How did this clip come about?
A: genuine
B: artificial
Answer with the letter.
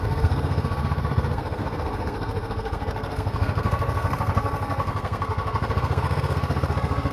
B